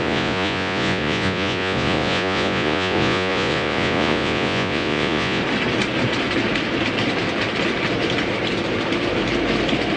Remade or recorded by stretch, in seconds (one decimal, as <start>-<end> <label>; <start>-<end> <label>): 0.0-5.4 remade; 5.4-10.0 recorded

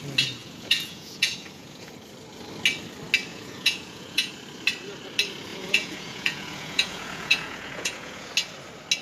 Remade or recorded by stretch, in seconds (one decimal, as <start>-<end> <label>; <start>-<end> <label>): 0.0-0.4 recorded; 0.4-1.9 remade; 1.9-3.3 recorded; 3.3-4.3 remade; 4.3-5.5 recorded; 5.5-8.3 remade; 8.3-9.0 recorded

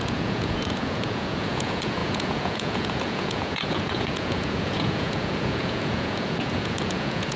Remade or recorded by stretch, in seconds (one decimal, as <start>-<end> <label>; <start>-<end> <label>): 0.0-7.4 remade

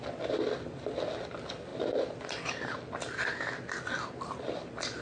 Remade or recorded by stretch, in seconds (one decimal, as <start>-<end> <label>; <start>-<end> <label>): 0.0-5.0 recorded

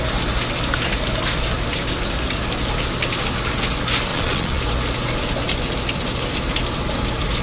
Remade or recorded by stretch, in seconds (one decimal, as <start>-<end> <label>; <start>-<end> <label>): 0.0-4.1 recorded; 4.1-4.6 remade; 4.6-7.4 recorded

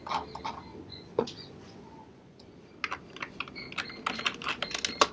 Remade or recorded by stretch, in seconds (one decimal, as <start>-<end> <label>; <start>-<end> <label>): 0.0-0.7 recorded; 0.7-2.6 remade; 2.6-5.1 recorded